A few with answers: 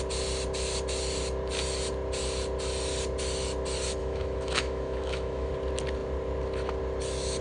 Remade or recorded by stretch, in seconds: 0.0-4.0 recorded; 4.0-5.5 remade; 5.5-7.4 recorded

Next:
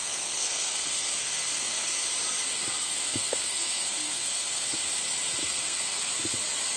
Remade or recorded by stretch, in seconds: 0.0-2.0 remade; 2.0-2.8 recorded; 2.8-4.7 remade; 4.7-5.4 recorded; 5.4-6.1 remade; 6.1-6.8 recorded